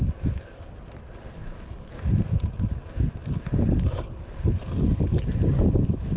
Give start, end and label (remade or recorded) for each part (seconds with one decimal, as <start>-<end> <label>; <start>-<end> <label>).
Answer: 0.0-6.2 recorded

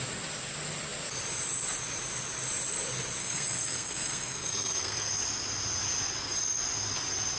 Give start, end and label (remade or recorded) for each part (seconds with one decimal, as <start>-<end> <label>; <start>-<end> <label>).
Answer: 0.0-3.2 recorded; 3.2-5.1 remade; 5.1-7.4 recorded